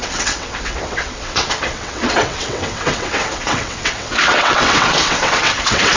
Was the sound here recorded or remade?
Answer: remade